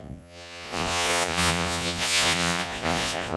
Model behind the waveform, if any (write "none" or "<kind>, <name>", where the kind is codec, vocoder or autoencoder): vocoder, Vocos